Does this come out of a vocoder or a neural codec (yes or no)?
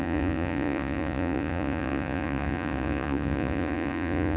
yes